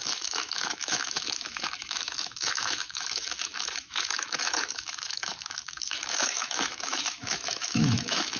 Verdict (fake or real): fake